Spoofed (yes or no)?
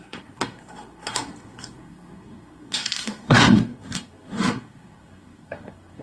yes